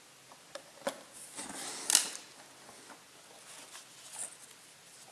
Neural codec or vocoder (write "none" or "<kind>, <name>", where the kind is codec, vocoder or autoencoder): none